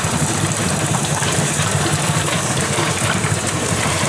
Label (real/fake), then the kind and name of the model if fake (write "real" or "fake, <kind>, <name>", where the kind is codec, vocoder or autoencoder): fake, vocoder, BigVGAN v2